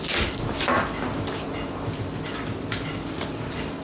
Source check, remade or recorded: recorded